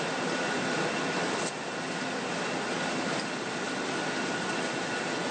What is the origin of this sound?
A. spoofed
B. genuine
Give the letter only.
B